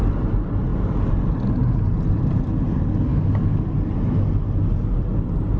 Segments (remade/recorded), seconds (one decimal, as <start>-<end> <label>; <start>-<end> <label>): 0.0-3.1 recorded; 3.1-3.6 remade; 3.6-5.6 recorded

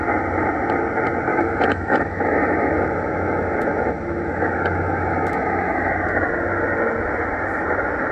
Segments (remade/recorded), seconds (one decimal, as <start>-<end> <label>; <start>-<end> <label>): 0.0-1.3 recorded; 1.3-5.9 remade; 5.9-8.1 recorded

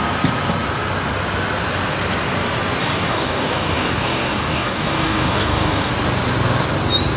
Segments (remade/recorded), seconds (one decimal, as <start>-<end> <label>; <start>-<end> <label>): 0.0-2.8 recorded; 2.8-5.9 remade; 5.9-7.2 recorded

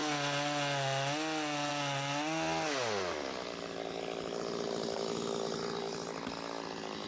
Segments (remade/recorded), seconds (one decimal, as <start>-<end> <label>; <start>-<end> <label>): 0.0-7.1 recorded

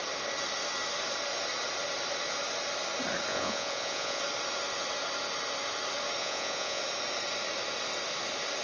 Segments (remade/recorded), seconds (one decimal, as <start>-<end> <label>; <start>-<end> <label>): 0.0-3.3 recorded; 3.3-4.2 remade; 4.2-6.2 recorded; 6.2-6.8 remade; 6.8-8.6 recorded

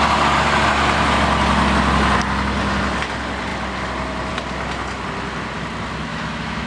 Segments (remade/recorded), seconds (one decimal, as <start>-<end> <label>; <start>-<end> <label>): 0.0-6.1 recorded; 6.1-6.7 remade